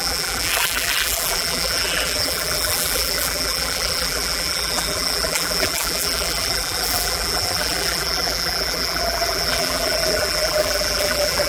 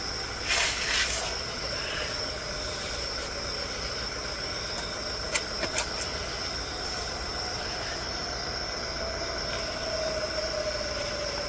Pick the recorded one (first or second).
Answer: second